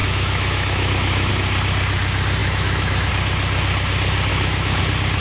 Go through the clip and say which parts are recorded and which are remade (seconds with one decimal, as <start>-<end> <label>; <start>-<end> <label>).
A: 0.0-1.3 remade; 1.3-2.4 recorded; 2.4-3.1 remade; 3.1-4.3 recorded; 4.3-4.8 remade; 4.8-5.2 recorded